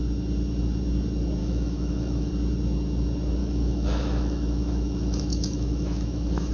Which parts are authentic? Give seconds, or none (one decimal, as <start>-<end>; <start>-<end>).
0.0-1.4; 2.3-3.4